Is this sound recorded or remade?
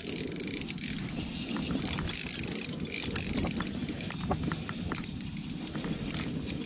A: recorded